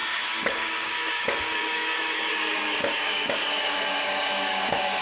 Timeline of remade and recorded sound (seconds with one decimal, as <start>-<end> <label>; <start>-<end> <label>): 0.0-5.0 remade